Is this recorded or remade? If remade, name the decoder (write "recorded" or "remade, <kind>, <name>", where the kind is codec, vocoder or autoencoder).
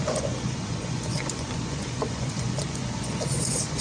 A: remade, vocoder, Vocos